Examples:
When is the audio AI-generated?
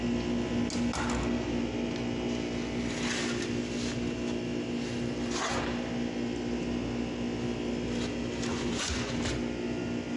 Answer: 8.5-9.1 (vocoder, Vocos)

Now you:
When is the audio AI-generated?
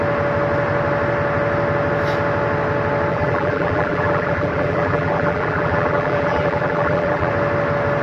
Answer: 3.1-7.3 (vocoder, BigVGAN v2)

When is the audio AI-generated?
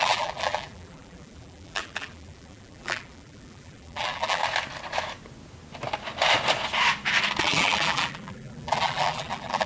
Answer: 0.0-4.4 (vocoder, BigVGAN v2); 7.4-9.7